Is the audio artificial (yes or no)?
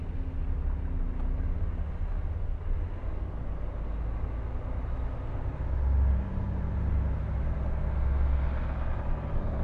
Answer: no